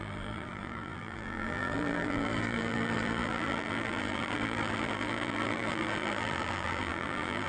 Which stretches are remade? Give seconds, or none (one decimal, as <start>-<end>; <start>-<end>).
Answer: 0.0-7.5